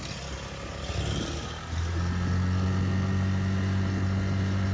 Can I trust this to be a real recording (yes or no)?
yes